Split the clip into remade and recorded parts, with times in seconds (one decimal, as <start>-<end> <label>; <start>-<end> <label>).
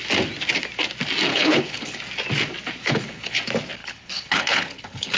0.0-1.3 recorded; 1.3-2.0 remade; 2.0-2.8 recorded; 2.8-3.4 remade; 3.4-3.8 recorded; 3.8-5.2 remade